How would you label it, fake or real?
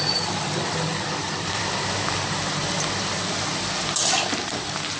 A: real